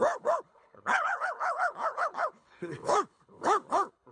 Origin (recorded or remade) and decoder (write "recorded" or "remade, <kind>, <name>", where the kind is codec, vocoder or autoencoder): remade, codec, HILCodec